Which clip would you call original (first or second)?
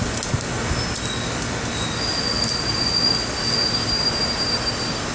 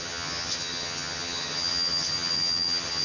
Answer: first